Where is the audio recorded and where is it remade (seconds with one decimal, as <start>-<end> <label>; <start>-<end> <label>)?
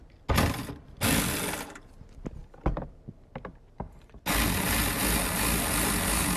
0.0-6.4 recorded